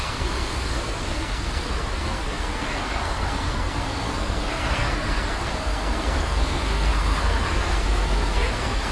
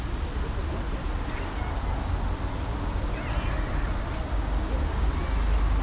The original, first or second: second